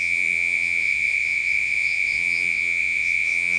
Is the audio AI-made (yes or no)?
yes